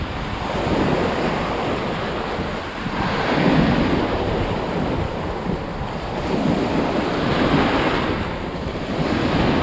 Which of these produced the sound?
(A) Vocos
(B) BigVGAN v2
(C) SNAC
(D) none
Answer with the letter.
D